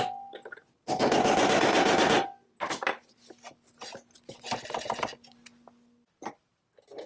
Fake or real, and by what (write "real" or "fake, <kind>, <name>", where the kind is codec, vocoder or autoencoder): real